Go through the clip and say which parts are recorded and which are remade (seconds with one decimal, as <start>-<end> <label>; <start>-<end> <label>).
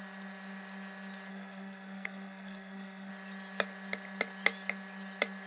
0.0-1.3 recorded; 1.3-3.1 remade; 3.1-5.5 recorded